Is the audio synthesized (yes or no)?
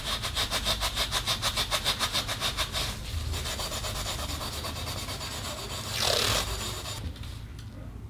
no